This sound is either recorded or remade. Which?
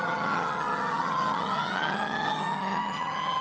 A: remade